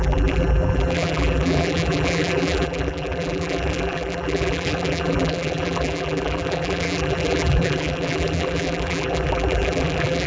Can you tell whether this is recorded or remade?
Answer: remade